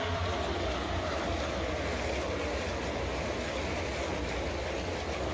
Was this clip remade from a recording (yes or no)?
no